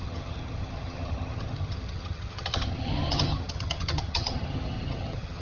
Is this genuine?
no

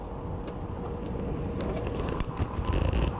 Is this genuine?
yes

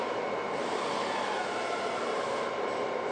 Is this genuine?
yes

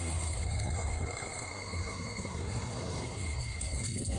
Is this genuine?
no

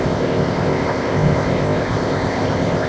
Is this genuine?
no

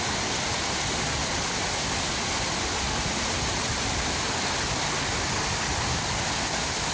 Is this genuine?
yes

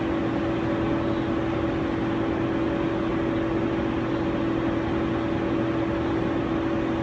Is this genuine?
yes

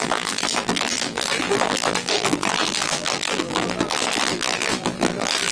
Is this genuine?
no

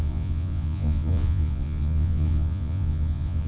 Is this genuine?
no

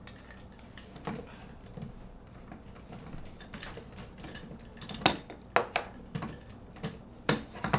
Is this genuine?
yes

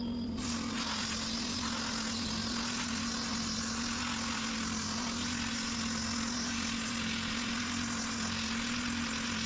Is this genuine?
yes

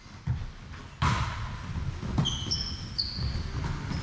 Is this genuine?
yes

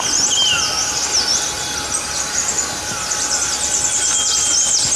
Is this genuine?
yes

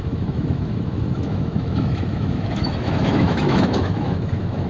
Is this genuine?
no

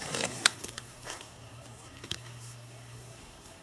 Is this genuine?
no